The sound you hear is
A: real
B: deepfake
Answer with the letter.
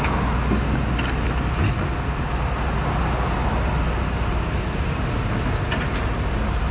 A